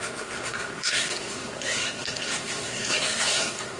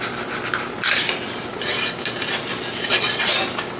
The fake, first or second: first